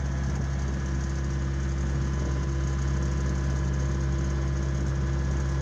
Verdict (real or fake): real